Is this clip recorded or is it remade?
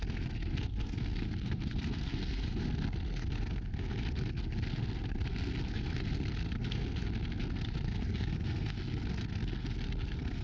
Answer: remade